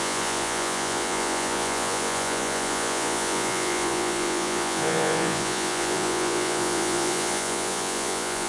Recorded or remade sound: remade